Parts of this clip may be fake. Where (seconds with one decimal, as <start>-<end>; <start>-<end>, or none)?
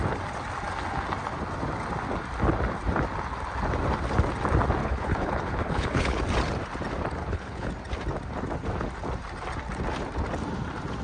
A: 4.8-6.2; 7.2-7.7